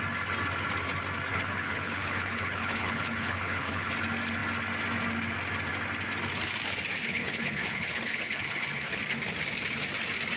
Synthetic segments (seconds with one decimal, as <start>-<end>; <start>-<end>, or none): 1.3-3.9; 7.0-9.0